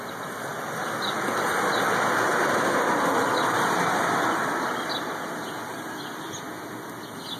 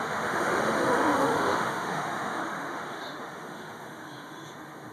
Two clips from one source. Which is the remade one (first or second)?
second